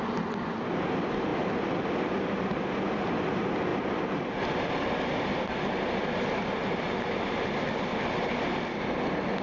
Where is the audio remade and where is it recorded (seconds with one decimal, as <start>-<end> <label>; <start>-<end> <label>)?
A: 0.0-3.7 recorded; 3.7-4.8 remade; 4.8-9.4 recorded